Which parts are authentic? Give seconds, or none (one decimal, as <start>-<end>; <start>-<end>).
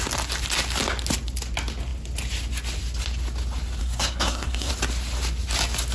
0.0-3.8; 4.7-5.9